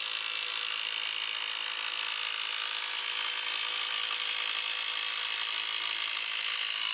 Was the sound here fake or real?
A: real